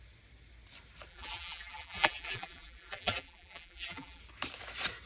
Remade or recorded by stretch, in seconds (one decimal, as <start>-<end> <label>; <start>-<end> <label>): 0.0-1.1 recorded; 1.1-4.2 remade; 4.2-5.1 recorded